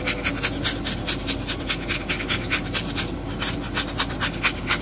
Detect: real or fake real